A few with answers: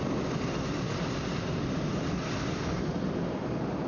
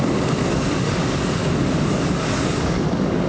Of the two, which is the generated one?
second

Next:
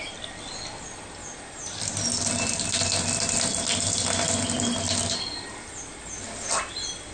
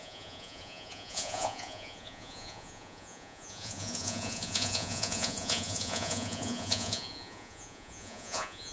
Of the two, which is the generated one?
second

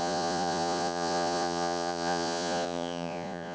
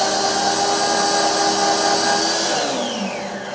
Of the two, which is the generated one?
first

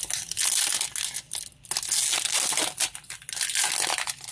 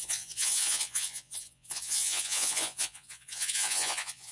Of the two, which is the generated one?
second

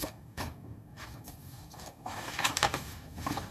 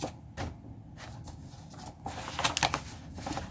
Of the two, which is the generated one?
first